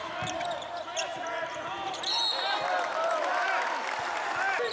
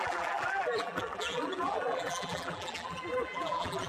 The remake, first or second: second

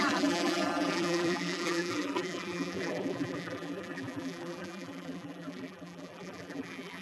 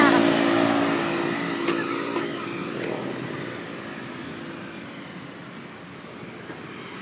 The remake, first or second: first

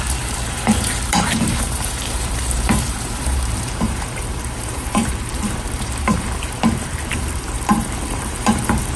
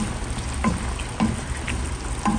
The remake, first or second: first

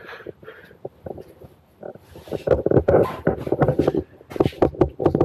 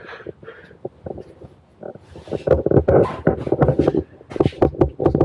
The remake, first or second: first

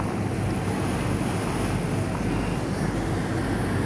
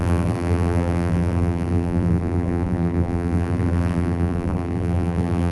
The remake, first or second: second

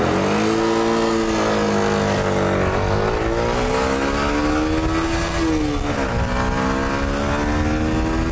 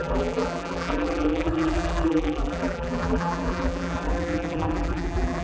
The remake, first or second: second